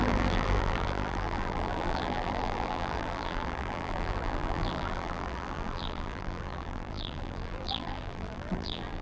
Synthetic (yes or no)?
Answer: yes